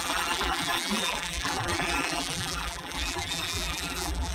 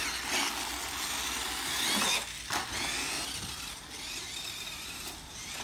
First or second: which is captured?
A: second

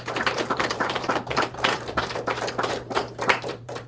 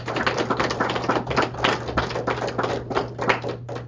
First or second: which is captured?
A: second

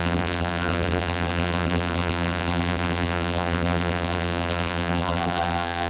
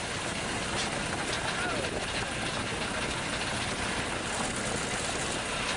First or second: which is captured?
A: second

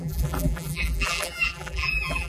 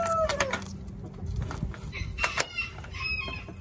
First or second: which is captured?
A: second